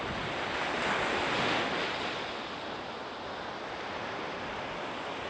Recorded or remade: recorded